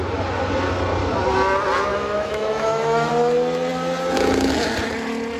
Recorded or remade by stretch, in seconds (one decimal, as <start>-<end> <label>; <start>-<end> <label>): 0.0-1.9 recorded; 1.9-3.1 remade; 3.1-5.4 recorded